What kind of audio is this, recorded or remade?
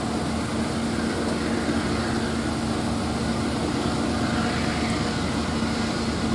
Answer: recorded